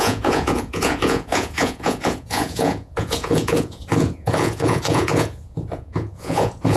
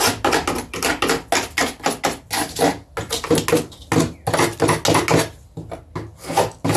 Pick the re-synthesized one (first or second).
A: first